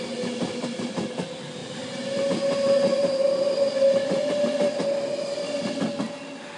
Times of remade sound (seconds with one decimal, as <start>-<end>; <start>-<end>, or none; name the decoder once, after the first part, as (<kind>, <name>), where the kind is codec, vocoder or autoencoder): 1.6-2.3 (vocoder, BigVGAN v2)